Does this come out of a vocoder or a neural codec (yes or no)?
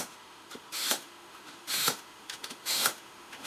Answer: yes